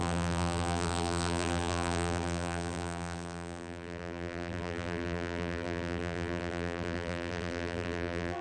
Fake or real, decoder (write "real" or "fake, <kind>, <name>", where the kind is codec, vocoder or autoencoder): fake, vocoder, BigVGAN v2